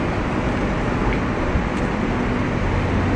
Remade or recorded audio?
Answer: recorded